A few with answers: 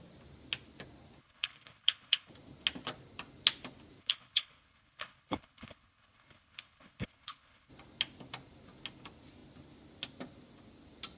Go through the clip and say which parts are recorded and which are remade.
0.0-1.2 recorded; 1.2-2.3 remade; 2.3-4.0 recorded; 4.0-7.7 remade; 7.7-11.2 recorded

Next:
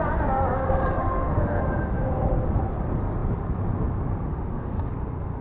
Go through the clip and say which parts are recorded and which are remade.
0.0-1.0 recorded; 1.0-1.6 remade; 1.6-4.3 recorded; 4.3-4.9 remade; 4.9-5.4 recorded

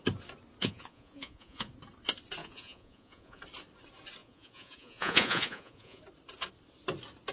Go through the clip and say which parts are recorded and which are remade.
0.0-0.6 recorded; 0.6-1.7 remade; 1.7-2.4 recorded; 2.4-3.4 remade; 3.4-4.2 recorded; 4.2-6.0 remade; 6.0-7.3 recorded